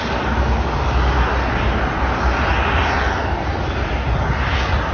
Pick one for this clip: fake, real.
real